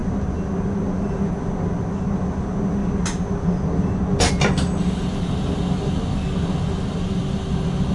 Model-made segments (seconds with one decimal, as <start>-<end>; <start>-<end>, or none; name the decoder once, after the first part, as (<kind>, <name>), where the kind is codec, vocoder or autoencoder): none

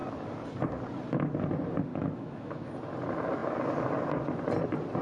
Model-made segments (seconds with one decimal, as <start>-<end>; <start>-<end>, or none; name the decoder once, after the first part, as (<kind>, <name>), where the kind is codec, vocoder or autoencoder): 1.9-2.7 (autoencoder, DAC-VAE)

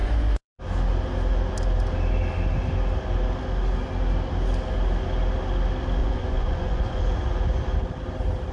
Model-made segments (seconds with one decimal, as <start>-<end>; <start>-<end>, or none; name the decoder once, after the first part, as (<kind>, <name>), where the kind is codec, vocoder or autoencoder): 0.0-0.6 (vocoder, Vocos); 6.0-7.0

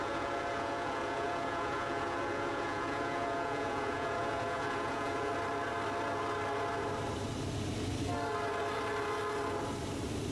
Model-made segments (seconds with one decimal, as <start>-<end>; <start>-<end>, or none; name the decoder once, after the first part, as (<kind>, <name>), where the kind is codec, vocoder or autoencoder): 0.0-5.3 (vocoder, Vocos)

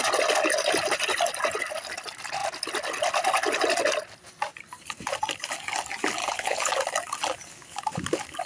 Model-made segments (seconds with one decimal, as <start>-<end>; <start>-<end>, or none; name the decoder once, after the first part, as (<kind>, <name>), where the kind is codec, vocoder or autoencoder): 6.2-6.7 (codec, HILCodec)

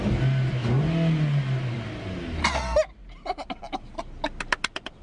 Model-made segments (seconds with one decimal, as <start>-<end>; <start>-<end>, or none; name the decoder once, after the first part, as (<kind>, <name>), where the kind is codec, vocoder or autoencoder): none

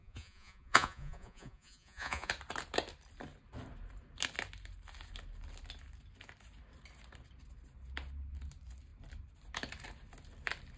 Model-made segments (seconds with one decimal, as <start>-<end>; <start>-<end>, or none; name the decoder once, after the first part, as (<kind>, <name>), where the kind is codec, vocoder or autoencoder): 0.0-2.3 (vocoder, Vocos)

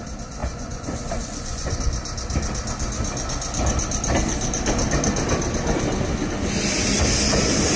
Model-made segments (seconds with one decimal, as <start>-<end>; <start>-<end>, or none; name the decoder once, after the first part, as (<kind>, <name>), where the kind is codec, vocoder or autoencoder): 0.4-1.8 (vocoder, Vocos)